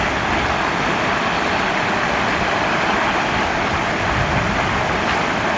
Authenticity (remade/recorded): recorded